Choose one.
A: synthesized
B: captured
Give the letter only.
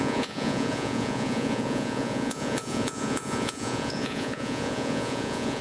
A